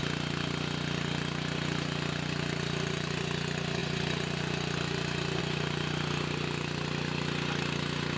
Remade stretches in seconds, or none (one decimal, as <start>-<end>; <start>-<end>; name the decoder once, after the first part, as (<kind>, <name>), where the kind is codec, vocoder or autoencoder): none